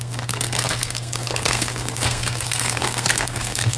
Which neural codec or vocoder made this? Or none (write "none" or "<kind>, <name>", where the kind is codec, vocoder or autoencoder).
codec, SNAC